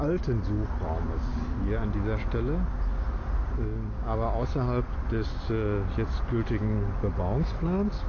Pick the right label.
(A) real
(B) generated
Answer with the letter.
A